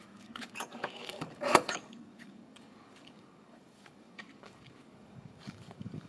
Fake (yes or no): yes